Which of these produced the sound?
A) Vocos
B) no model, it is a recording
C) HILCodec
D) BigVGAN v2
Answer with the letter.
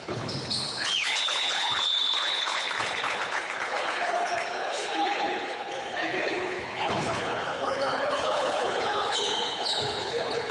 C